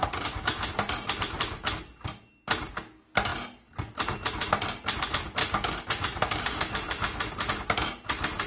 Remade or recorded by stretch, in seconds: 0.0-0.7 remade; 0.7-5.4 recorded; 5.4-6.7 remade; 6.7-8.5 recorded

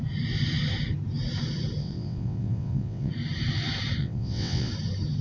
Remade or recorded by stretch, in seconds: 0.0-1.8 recorded; 1.8-3.1 remade; 3.1-4.0 recorded; 4.0-4.7 remade; 4.7-5.2 recorded

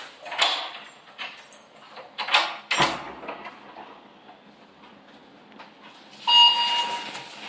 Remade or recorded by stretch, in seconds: 0.0-7.5 recorded

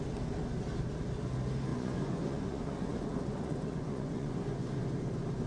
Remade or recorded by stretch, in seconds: 0.0-1.7 recorded; 1.7-4.8 remade; 4.8-5.5 recorded